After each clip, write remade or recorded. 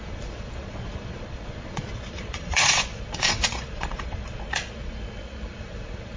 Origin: remade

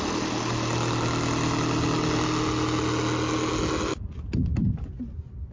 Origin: recorded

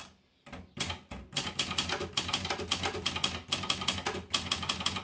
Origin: remade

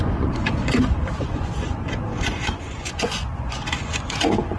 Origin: remade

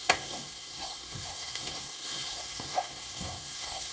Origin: remade